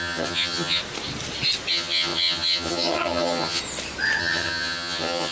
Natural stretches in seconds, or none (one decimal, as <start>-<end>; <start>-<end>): 0.8-1.7; 3.6-4.2

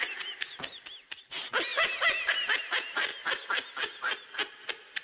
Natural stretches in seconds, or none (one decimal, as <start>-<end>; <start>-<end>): 0.0-5.0